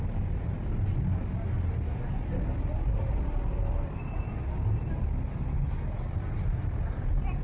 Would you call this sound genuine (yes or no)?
yes